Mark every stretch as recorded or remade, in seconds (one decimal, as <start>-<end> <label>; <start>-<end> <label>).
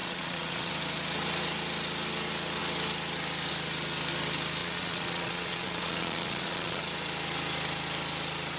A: 0.0-0.7 remade; 0.7-4.6 recorded; 4.6-6.8 remade; 6.8-8.6 recorded